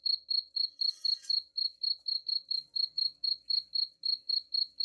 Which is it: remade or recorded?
recorded